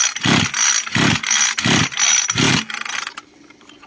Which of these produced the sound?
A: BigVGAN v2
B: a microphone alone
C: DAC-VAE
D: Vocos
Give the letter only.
B